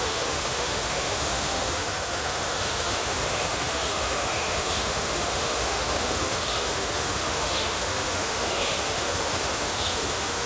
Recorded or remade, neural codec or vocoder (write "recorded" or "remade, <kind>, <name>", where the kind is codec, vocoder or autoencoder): remade, autoencoder, DAC-VAE